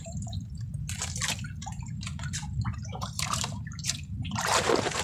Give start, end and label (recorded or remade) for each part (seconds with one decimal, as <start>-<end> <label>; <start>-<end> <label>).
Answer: 0.0-0.8 remade; 0.8-1.7 recorded; 1.7-4.5 remade; 4.5-5.0 recorded